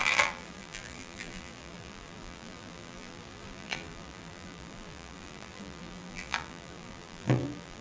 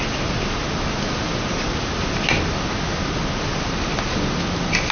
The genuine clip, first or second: second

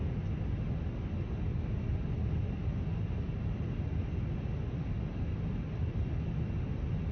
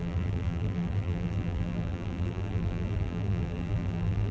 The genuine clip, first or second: first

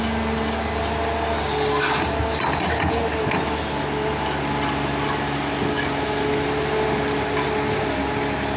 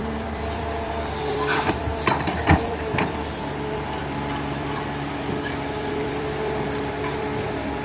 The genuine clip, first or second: first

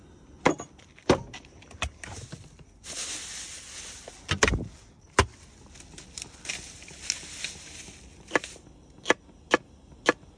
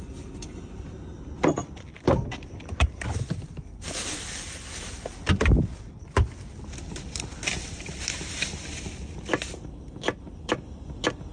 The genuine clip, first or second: first